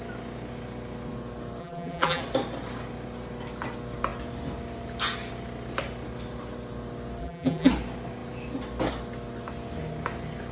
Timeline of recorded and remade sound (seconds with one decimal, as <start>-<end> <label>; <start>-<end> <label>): 0.0-1.6 recorded; 1.6-2.2 remade; 2.2-7.2 recorded; 7.2-7.7 remade; 7.7-10.5 recorded